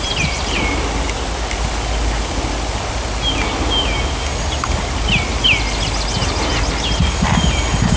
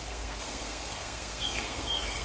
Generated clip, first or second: second